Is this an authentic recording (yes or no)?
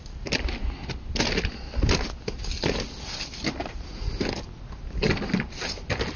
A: yes